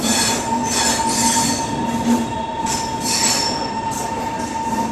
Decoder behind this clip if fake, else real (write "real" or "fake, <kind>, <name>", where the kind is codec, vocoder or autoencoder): real